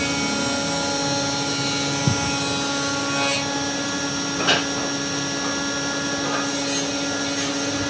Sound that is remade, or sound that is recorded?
recorded